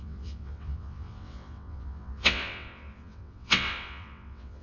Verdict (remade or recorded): remade